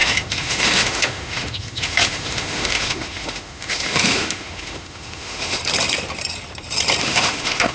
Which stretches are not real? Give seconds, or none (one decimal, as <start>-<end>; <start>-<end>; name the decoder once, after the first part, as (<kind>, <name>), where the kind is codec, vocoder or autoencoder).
0.0-5.6 (autoencoder, DAC-VAE); 7.0-7.7